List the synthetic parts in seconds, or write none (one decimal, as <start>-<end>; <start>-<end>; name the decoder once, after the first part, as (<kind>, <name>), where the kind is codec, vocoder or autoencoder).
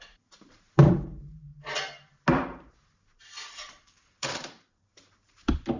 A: 0.0-1.5 (vocoder, BigVGAN v2); 3.5-5.8